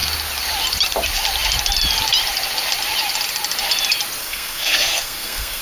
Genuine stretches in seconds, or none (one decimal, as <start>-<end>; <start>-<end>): 0.0-4.2